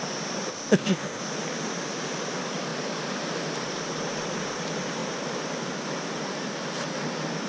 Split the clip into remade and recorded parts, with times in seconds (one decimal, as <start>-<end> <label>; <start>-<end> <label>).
0.0-0.5 recorded; 0.5-1.2 remade; 1.2-7.5 recorded